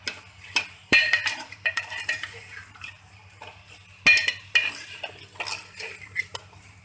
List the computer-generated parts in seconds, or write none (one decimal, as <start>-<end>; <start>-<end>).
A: 0.9-3.4